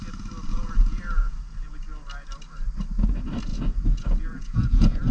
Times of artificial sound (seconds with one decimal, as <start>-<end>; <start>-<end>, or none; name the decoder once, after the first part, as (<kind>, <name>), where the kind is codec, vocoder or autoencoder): 0.5-1.4 (vocoder, Vocos); 3.5-5.1